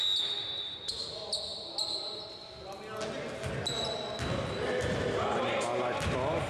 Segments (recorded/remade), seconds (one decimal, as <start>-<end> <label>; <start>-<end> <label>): 0.0-6.5 recorded